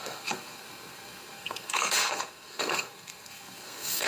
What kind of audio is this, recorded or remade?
remade